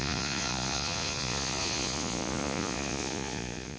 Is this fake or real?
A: fake